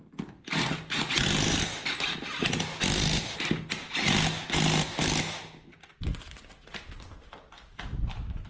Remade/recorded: recorded